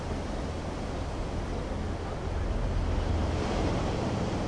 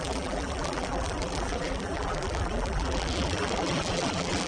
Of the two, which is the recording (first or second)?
first